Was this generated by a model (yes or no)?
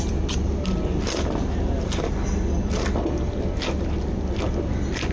no